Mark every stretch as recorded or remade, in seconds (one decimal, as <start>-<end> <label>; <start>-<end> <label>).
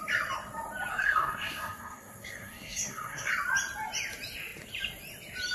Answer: 0.0-0.9 recorded; 0.9-3.3 remade; 3.3-5.5 recorded